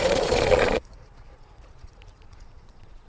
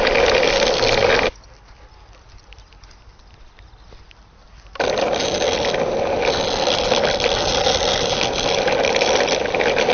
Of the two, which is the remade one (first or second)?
first